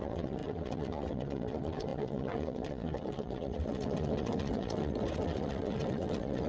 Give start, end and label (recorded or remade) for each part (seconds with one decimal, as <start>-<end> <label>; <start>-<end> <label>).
0.0-6.5 remade